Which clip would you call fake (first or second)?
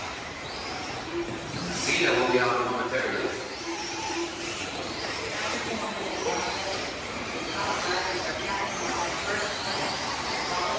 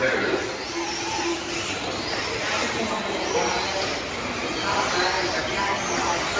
first